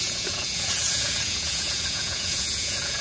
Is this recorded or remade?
remade